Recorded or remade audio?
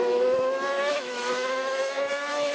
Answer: remade